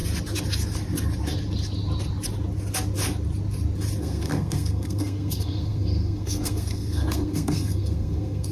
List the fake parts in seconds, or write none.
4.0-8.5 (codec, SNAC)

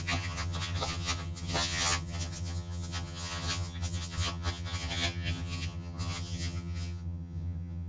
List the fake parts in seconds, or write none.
0.0-7.9 (vocoder, HiFi-GAN)

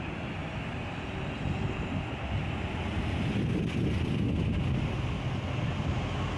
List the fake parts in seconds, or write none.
none

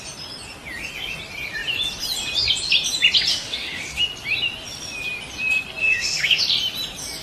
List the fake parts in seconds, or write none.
3.3-4.0 (autoencoder, DAC-VAE); 5.8-6.4

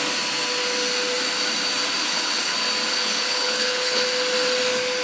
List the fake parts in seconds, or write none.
2.0-2.5 (codec, HILCodec); 2.9-4.0

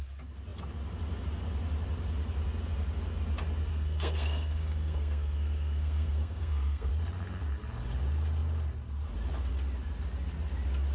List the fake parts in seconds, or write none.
3.7-6.9 (codec, SNAC)

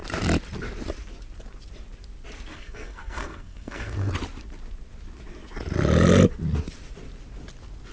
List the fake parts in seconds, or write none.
2.5-4.1 (codec, SNAC)